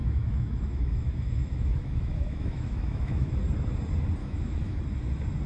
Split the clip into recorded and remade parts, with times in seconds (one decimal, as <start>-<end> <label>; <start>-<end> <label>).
0.0-3.3 remade; 3.3-4.2 recorded; 4.2-4.8 remade; 4.8-5.5 recorded